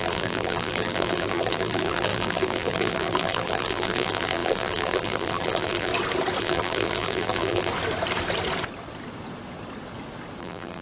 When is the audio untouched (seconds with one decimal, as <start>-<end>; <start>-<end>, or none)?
5.9-6.4; 7.7-10.4